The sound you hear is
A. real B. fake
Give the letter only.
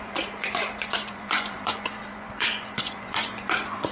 B